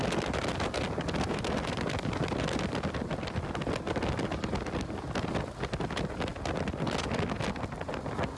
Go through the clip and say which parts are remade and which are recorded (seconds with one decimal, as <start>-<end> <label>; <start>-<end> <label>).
0.0-8.4 recorded